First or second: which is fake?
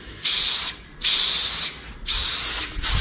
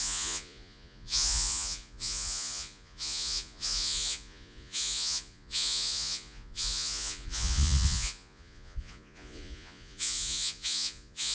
second